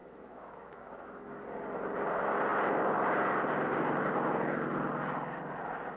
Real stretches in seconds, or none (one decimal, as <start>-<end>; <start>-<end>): 1.4-6.0